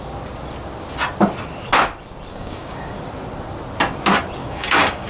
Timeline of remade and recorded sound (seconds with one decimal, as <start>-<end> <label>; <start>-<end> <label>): 0.0-2.3 recorded; 2.3-3.0 remade; 3.0-4.4 recorded; 4.4-5.1 remade